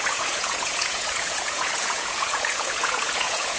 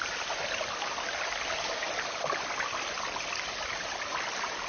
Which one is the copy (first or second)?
first